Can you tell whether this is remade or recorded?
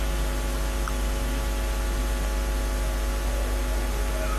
recorded